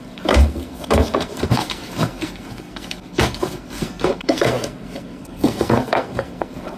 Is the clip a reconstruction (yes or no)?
yes